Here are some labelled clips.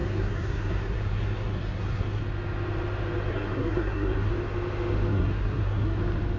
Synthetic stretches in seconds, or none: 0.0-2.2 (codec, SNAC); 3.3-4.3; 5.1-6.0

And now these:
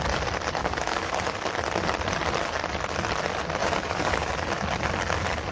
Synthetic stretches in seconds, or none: 0.6-1.2 (codec, DAC); 3.6-4.3

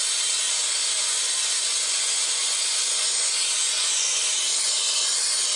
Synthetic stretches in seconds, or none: 0.8-4.2 (vocoder, Vocos)